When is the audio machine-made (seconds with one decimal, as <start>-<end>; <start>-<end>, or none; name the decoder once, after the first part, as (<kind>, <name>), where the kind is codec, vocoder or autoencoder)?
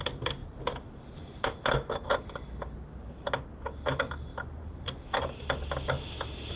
none